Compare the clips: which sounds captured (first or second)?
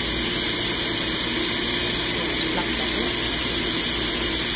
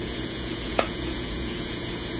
first